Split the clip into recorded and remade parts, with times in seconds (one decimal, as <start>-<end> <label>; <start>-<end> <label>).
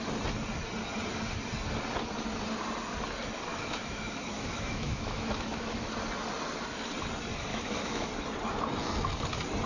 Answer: 0.0-3.5 recorded; 3.5-5.9 remade; 5.9-7.5 recorded; 7.5-8.1 remade; 8.1-9.7 recorded